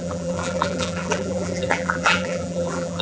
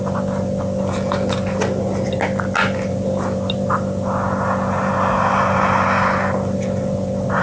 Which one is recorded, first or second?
second